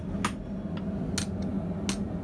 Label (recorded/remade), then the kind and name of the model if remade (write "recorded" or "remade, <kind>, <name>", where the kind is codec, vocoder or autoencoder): recorded